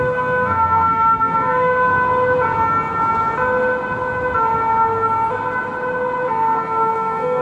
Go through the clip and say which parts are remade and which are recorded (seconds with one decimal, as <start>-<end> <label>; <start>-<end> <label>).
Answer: 0.0-1.9 remade; 1.9-6.3 recorded; 6.3-7.4 remade